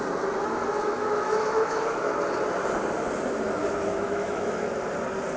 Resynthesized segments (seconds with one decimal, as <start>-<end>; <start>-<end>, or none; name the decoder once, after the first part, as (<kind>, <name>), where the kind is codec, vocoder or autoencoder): 0.8-2.0 (autoencoder, DAC-VAE); 3.6-4.7